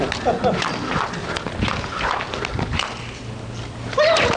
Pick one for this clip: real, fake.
real